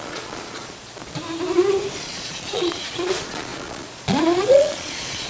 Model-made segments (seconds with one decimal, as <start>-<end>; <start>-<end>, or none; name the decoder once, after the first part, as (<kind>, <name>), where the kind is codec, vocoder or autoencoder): 0.0-1.0 (vocoder, Vocos); 2.0-5.3